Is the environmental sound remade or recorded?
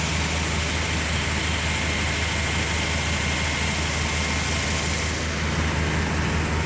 recorded